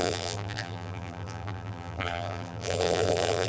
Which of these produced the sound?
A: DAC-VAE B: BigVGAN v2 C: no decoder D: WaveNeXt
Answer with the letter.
B